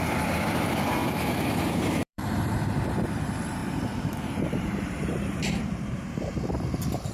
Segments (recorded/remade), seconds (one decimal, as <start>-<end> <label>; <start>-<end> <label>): 0.0-7.1 remade